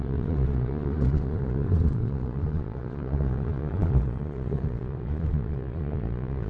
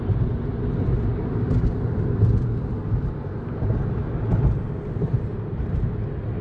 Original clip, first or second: second